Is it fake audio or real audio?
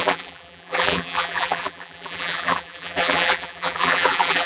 fake